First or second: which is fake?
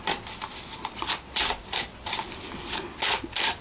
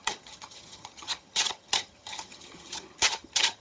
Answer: second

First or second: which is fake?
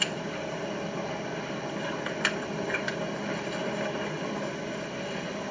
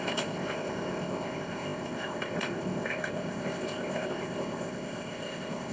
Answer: second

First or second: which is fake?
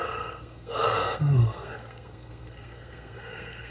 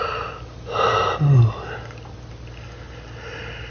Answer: first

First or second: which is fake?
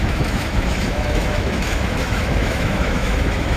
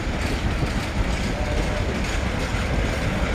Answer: first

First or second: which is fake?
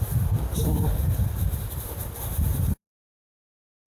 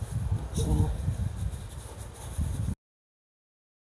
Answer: first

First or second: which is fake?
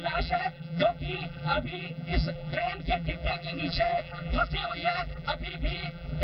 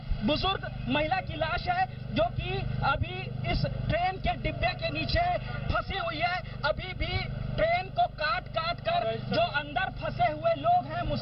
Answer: first